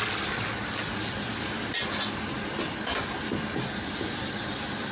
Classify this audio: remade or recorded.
recorded